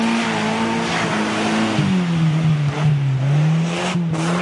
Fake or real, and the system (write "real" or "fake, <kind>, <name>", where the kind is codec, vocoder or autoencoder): real